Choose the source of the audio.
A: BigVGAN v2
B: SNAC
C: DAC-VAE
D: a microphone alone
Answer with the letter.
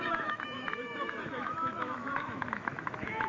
C